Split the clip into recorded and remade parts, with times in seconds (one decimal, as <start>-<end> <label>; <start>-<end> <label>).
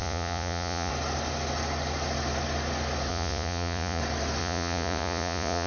0.0-0.9 remade; 0.9-3.1 recorded; 3.1-4.0 remade; 4.0-4.4 recorded; 4.4-5.7 remade